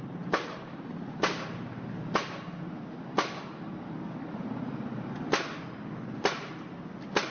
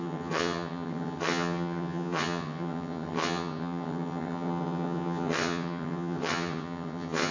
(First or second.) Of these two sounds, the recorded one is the first